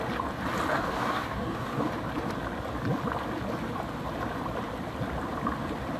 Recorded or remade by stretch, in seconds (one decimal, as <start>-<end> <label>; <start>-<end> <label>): 0.0-0.7 recorded; 0.7-1.9 remade; 1.9-6.0 recorded